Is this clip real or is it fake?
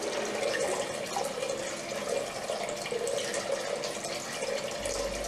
real